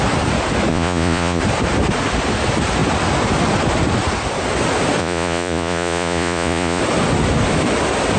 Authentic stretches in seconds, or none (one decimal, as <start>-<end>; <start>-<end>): 0.0-0.7; 1.4-5.0; 6.8-8.2